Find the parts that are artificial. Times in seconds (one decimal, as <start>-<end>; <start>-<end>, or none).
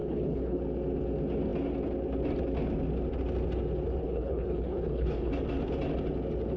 0.0-0.6; 4.0-5.3